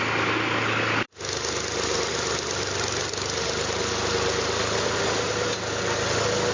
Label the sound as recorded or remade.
recorded